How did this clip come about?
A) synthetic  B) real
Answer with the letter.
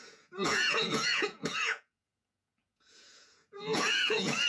A